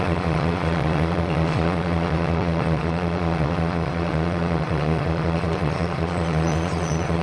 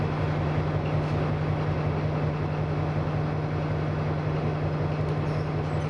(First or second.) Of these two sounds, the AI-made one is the first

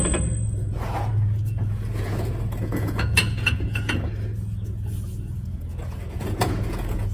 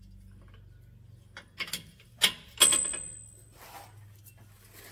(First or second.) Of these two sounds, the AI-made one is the first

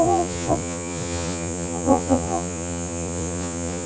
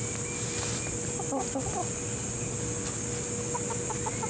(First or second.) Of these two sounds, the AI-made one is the first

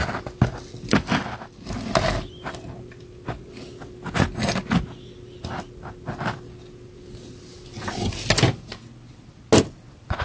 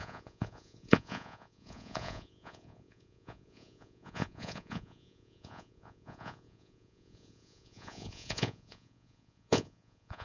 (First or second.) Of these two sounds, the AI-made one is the second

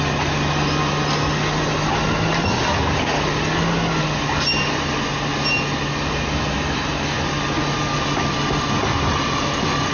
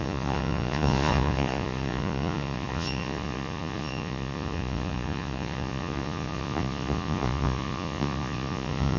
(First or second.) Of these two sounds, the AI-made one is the second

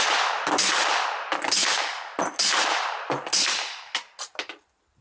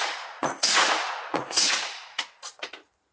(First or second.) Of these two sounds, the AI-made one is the second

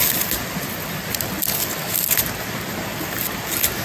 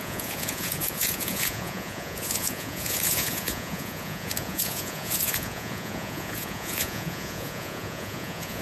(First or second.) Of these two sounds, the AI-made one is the second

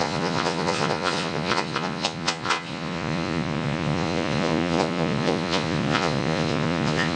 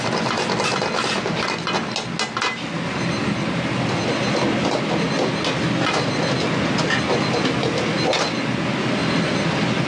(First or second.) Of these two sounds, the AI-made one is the first